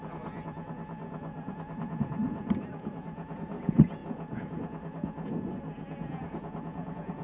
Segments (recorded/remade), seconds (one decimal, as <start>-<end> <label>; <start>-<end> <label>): 0.0-7.2 remade